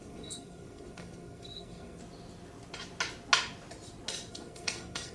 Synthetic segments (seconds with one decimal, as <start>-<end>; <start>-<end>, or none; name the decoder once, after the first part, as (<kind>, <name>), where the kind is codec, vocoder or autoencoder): 0.0-2.0 (codec, SNAC); 4.3-5.1